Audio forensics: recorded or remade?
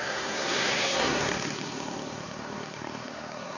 remade